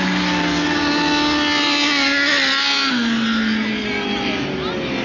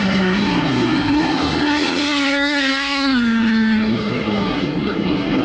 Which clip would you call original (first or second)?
first